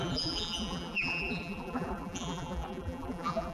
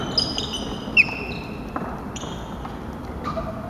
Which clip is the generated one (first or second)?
first